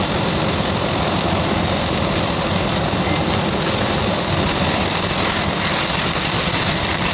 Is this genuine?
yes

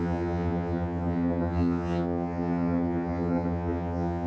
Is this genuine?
no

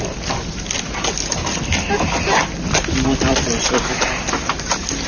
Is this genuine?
yes